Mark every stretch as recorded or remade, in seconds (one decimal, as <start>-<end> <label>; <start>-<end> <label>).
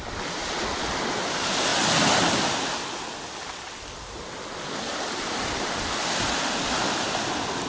0.0-7.7 recorded